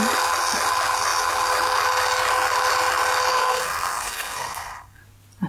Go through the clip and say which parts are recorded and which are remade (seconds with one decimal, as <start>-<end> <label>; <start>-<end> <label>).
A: 0.0-3.3 recorded; 3.3-5.0 remade; 5.0-5.5 recorded